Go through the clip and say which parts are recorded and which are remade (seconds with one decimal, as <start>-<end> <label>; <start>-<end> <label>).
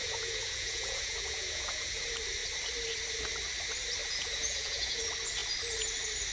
0.0-1.9 remade; 1.9-4.0 recorded; 4.0-5.0 remade; 5.0-6.3 recorded